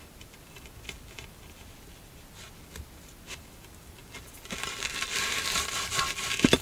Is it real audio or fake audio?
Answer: real